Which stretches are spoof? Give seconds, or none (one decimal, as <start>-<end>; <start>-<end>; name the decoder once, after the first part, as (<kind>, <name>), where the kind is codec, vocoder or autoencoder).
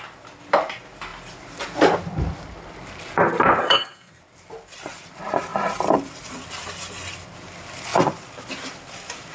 3.6-4.2 (codec, SNAC)